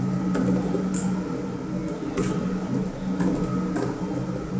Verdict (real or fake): real